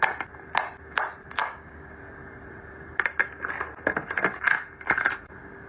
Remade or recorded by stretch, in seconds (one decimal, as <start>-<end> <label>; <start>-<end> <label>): 0.0-1.4 recorded; 1.4-1.9 remade; 1.9-5.7 recorded

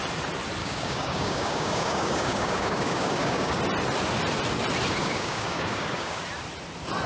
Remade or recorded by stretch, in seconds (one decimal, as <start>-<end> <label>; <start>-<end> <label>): 0.0-0.6 recorded; 0.6-3.6 remade; 3.6-5.0 recorded; 5.0-6.2 remade; 6.2-7.1 recorded